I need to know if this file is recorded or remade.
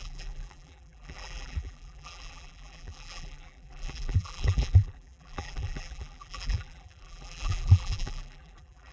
remade